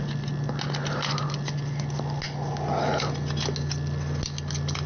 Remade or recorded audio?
recorded